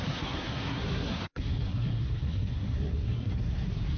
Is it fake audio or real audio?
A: fake